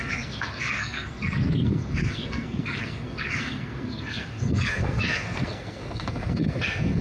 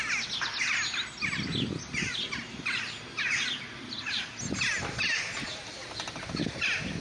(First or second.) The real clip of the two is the second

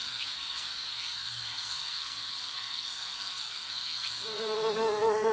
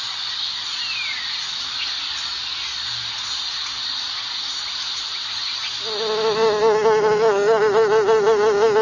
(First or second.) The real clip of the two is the second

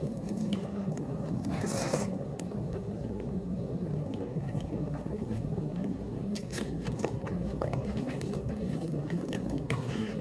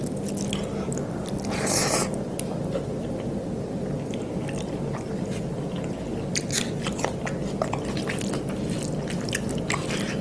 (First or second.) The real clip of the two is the second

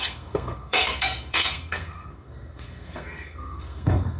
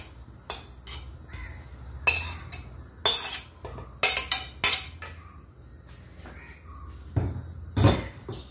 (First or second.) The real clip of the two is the second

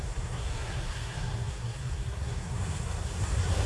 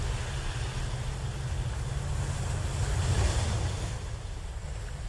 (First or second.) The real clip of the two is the second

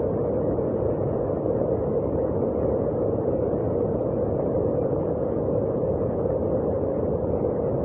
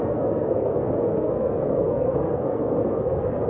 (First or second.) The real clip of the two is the first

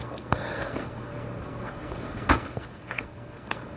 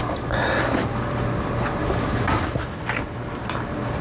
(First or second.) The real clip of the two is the second